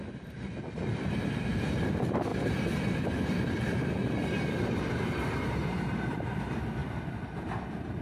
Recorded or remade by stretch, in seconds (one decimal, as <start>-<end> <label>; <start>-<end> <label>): 0.0-2.3 remade; 2.3-3.0 recorded; 3.0-4.0 remade; 4.0-4.6 recorded; 4.6-6.8 remade; 6.8-7.4 recorded; 7.4-8.0 remade

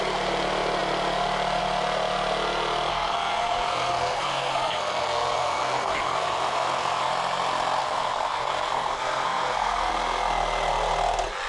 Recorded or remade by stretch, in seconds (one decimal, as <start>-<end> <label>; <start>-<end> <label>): 0.0-2.9 recorded; 2.9-7.1 remade; 7.1-7.8 recorded; 7.8-9.9 remade; 9.9-11.5 recorded

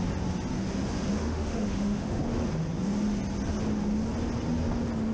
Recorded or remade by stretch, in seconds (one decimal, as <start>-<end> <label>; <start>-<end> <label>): 0.0-1.2 recorded; 1.2-2.2 remade; 2.2-5.1 recorded

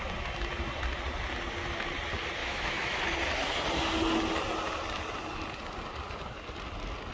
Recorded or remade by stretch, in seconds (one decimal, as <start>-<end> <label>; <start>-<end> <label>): 0.0-2.4 recorded; 2.4-3.0 remade; 3.0-7.1 recorded